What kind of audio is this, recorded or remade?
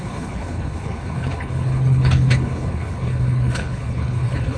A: remade